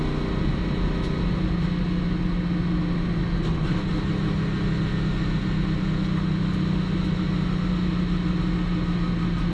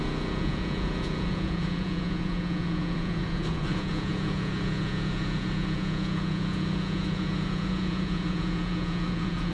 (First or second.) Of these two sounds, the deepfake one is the second